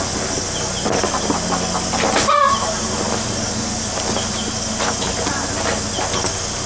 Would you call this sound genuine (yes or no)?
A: yes